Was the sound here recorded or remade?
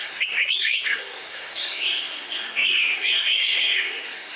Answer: remade